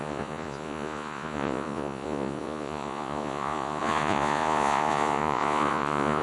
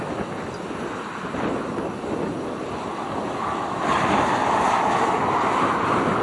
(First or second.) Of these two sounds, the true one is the second